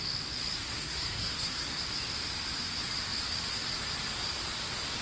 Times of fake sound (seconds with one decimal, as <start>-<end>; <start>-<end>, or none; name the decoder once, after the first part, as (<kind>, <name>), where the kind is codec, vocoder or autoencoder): 0.7-1.8 (codec, SNAC)